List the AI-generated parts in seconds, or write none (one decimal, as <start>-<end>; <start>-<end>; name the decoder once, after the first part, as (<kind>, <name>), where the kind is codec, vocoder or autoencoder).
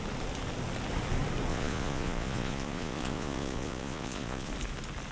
1.5-4.5 (vocoder, Vocos)